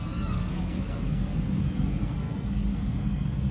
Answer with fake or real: fake